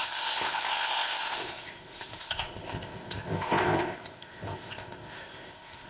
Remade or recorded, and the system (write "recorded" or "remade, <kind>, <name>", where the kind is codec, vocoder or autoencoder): remade, codec, ZipCodec